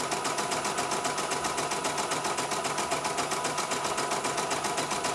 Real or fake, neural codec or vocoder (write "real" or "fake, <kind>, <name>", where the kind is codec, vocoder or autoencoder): real